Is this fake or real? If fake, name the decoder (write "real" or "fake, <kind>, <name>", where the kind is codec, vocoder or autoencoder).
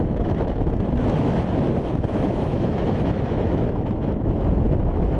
fake, autoencoder, DAC-VAE